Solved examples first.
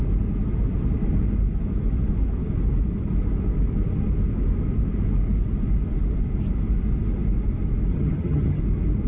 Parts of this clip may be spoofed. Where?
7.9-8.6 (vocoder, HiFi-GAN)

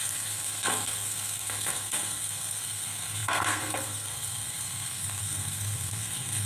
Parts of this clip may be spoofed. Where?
0.0-6.5 (codec, SNAC)

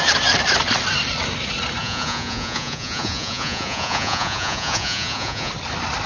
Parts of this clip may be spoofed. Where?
1.8-5.5 (vocoder, Vocos)

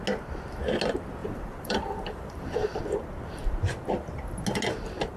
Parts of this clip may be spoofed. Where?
1.2-2.8 (vocoder, BigVGAN v2)